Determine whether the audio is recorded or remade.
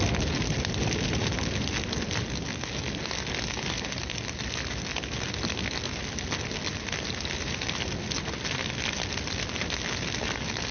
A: recorded